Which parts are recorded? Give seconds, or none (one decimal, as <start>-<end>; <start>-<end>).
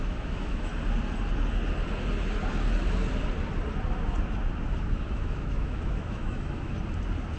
0.7-5.1; 6.7-7.4